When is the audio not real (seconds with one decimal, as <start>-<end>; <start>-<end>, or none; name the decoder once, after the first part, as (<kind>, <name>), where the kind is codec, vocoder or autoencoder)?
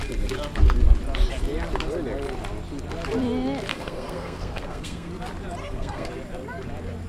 3.7-5.1 (codec, SNAC); 5.6-6.1